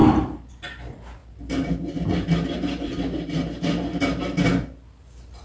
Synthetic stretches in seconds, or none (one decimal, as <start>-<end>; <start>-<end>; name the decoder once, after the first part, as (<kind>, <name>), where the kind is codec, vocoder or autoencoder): none